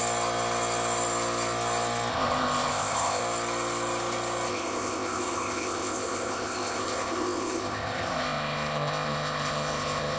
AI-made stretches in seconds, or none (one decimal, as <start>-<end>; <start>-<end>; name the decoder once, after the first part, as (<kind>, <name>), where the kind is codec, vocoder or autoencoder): 2.1-3.2 (codec, ZipCodec); 4.5-10.2